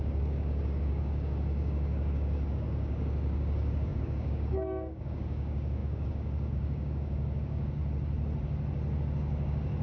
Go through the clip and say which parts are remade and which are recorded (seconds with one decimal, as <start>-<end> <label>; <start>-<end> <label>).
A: 0.0-7.8 remade; 7.8-9.0 recorded; 9.0-9.8 remade